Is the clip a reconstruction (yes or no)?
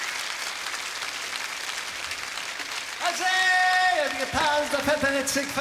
no